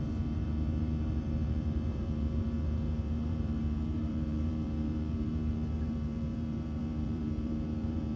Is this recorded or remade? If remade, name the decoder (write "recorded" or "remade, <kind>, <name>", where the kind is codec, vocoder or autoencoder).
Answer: remade, vocoder, BigVGAN v2